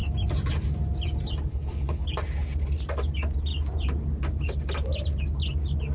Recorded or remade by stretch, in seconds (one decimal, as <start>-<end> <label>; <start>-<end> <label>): 0.0-1.5 recorded; 1.5-2.0 remade; 2.0-5.9 recorded